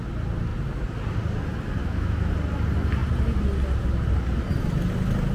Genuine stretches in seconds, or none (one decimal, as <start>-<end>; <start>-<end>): 0.0-1.8; 2.3-5.3